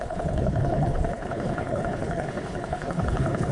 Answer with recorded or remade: remade